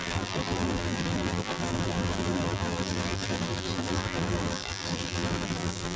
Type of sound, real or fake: fake